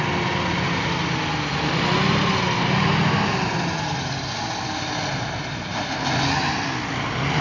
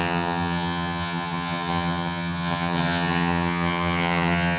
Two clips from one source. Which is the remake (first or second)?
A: second